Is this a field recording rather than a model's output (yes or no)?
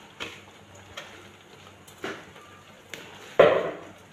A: yes